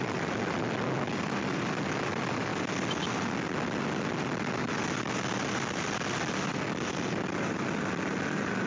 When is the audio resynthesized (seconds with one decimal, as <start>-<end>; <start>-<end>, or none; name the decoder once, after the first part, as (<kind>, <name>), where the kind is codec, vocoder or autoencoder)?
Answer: 0.0-2.5 (vocoder, BigVGAN v2); 5.5-8.7